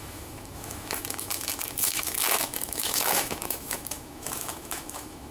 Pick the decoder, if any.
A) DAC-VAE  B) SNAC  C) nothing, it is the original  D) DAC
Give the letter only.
A